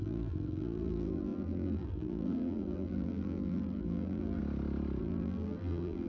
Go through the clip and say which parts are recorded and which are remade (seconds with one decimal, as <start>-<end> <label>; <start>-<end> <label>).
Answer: 0.0-4.4 remade; 4.4-5.0 recorded; 5.0-6.1 remade